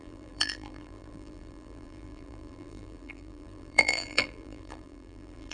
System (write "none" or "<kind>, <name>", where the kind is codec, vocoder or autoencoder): vocoder, BigVGAN v2